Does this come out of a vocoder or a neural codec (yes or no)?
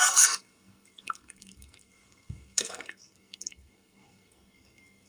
yes